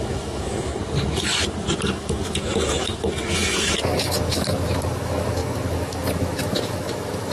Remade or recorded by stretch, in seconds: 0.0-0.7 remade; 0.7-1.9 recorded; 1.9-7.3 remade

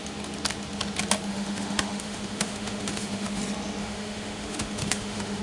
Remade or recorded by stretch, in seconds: 0.0-1.3 recorded; 1.3-3.4 remade; 3.4-3.8 recorded; 3.8-5.4 remade

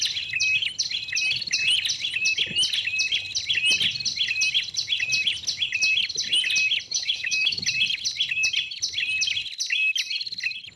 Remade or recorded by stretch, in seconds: 0.0-6.9 recorded; 6.9-7.6 remade; 7.6-10.8 recorded

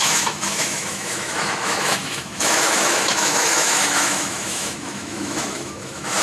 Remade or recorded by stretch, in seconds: 0.0-6.2 remade